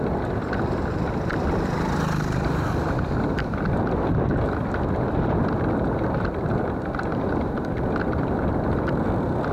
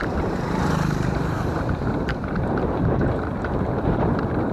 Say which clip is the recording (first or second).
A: first